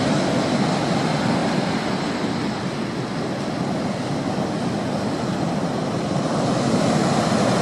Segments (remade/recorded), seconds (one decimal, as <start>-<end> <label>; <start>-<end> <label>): 0.0-1.4 recorded; 1.4-2.6 remade; 2.6-7.6 recorded